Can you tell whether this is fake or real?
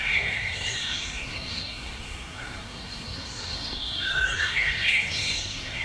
fake